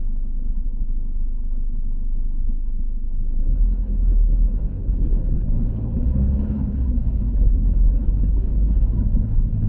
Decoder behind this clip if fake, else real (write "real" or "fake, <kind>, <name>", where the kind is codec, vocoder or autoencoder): fake, codec, HILCodec